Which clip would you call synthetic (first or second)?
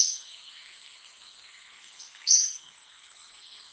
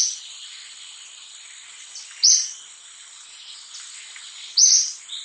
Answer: first